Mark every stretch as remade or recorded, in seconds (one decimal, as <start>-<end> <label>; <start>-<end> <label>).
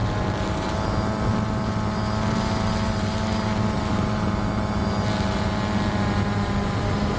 0.0-7.2 recorded